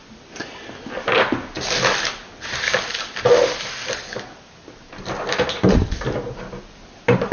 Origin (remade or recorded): recorded